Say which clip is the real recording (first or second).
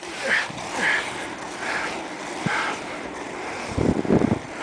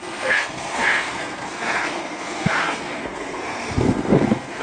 first